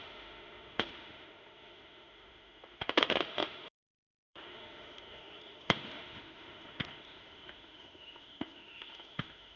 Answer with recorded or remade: remade